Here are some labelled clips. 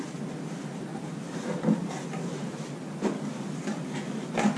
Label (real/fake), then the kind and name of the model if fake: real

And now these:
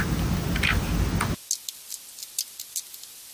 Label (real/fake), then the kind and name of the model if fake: real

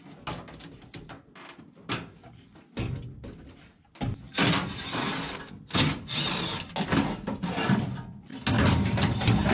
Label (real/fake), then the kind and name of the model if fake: real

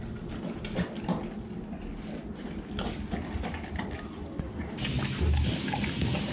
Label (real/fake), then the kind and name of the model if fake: real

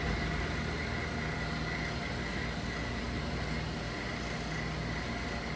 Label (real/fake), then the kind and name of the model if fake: real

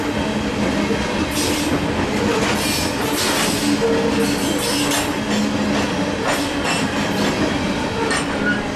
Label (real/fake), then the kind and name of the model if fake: real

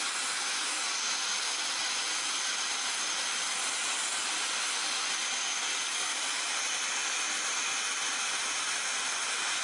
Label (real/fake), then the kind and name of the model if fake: real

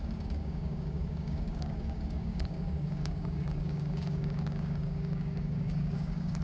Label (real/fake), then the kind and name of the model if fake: fake, codec, DAC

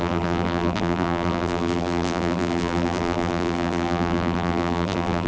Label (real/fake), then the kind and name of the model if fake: fake, vocoder, BigVGAN v2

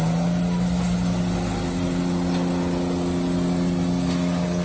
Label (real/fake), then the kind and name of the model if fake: real